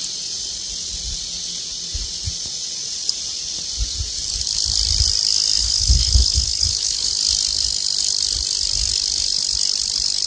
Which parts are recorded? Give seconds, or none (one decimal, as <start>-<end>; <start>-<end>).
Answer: 0.0-5.6; 7.1-10.3